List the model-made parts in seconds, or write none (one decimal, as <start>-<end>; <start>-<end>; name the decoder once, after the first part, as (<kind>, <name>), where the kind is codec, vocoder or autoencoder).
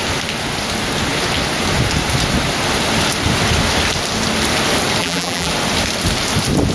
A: 5.0-5.5 (vocoder, BigVGAN v2)